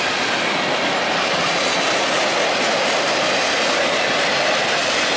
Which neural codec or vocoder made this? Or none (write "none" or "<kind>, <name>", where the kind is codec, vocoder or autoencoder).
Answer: none